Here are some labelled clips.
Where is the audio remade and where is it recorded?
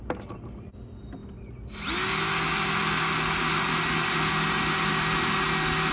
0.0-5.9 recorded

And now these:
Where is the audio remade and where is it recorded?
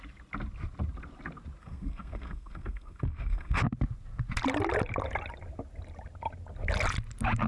0.0-1.6 recorded; 1.6-3.6 remade; 3.6-7.5 recorded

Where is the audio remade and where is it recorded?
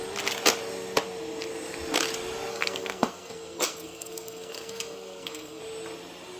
0.0-2.5 recorded; 2.5-5.6 remade; 5.6-6.4 recorded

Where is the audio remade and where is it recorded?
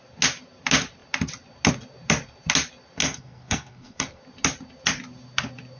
0.0-3.0 recorded; 3.0-4.2 remade; 4.2-5.8 recorded